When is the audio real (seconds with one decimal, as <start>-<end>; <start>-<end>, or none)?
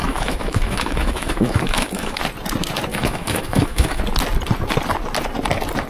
2.2-2.9; 4.0-5.9